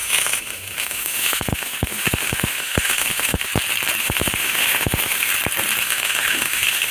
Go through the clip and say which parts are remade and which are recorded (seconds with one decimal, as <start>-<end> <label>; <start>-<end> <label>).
0.0-3.5 remade; 3.5-4.0 recorded; 4.0-5.3 remade; 5.3-5.8 recorded; 5.8-6.9 remade